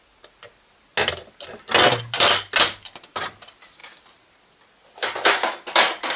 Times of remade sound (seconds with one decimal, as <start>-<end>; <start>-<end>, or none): none